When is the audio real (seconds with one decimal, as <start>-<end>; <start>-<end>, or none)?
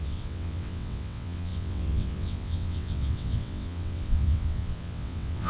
none